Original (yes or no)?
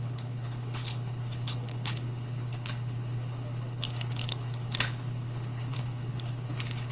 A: no